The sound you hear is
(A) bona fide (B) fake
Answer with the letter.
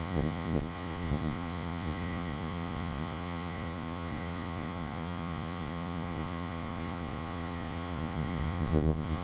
B